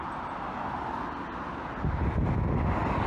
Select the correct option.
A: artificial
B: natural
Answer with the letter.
B